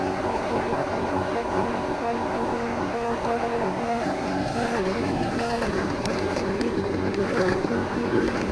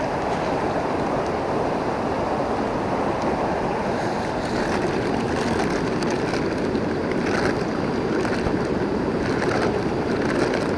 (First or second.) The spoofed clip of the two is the first